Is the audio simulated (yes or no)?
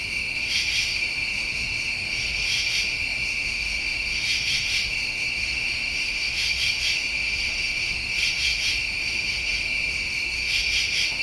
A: yes